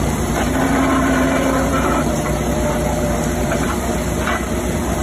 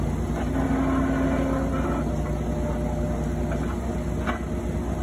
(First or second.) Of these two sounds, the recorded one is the second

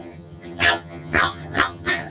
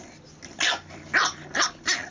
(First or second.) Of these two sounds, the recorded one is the second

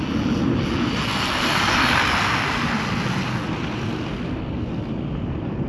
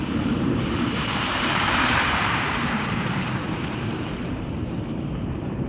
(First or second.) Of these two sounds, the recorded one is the first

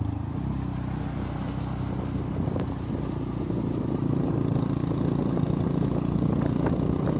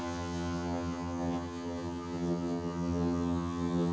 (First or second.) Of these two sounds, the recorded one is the first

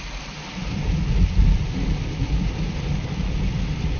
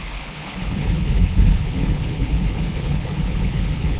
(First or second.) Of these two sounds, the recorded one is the first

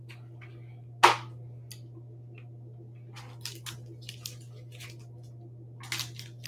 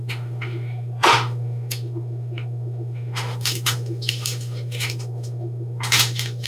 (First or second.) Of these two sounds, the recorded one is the first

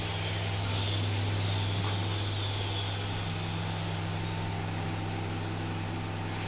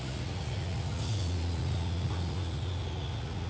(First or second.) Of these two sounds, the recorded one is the first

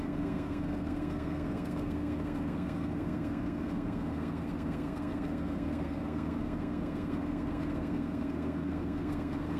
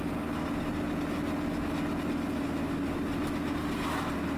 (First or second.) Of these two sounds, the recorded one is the second